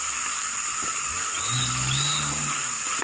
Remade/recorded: recorded